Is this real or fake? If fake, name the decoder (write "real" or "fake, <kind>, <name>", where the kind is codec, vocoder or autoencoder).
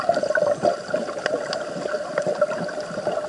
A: real